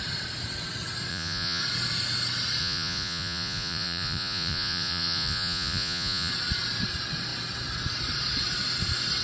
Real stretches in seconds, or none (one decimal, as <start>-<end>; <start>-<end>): 0.0-1.1; 1.6-2.6; 6.3-9.2